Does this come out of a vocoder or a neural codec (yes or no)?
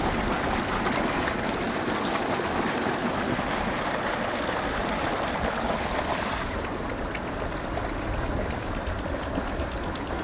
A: no